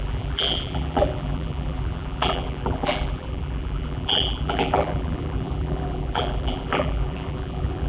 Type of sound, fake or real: fake